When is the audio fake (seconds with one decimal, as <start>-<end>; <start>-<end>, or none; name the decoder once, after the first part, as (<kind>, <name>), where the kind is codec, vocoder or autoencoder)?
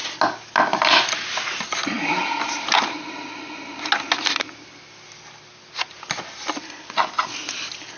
none